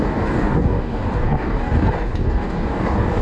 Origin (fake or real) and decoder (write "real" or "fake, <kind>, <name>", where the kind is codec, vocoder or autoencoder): fake, codec, DAC